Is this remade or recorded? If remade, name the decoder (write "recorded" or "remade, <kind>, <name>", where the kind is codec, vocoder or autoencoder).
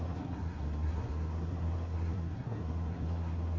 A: remade, codec, SNAC